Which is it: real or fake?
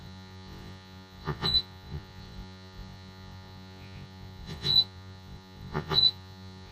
fake